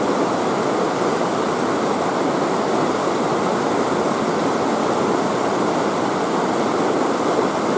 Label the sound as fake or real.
real